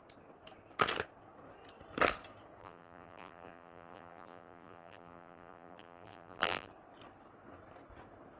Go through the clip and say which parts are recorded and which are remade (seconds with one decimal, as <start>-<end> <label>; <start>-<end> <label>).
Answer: 0.0-2.6 recorded; 2.6-6.7 remade; 6.7-8.4 recorded